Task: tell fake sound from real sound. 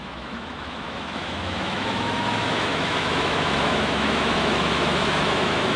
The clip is fake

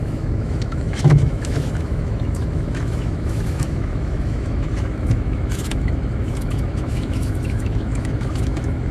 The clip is fake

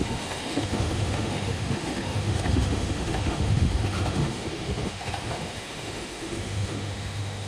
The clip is fake